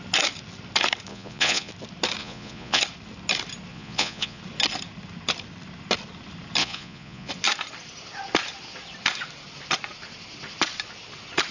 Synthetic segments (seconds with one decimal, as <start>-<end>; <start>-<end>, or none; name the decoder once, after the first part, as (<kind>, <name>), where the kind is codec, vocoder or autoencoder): 1.1-1.7 (vocoder, Vocos); 2.2-2.8; 3.7-4.4; 6.6-7.3